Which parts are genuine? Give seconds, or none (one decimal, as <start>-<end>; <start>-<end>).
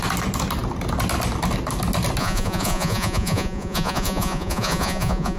0.0-2.2